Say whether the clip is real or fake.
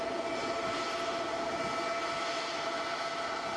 real